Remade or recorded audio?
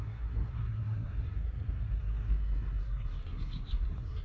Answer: remade